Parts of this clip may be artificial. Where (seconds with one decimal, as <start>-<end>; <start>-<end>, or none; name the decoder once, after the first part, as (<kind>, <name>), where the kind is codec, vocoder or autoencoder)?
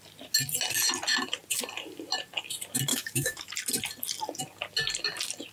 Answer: 2.9-3.5 (autoencoder, DAC-VAE)